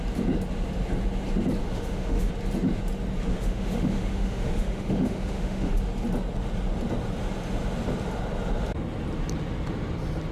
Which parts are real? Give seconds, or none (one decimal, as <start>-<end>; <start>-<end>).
0.0-1.6; 2.3-3.3; 5.8-10.3